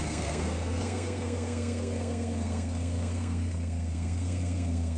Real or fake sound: fake